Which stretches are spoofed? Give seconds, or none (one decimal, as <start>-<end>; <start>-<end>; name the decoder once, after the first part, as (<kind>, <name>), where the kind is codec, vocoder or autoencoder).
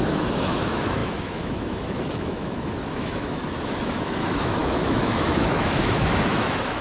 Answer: 0.0-6.8 (autoencoder, DAC-VAE)